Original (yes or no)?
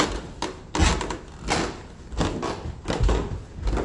yes